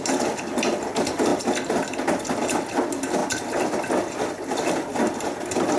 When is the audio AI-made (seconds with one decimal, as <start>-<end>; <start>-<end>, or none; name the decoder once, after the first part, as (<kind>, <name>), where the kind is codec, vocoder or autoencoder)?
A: none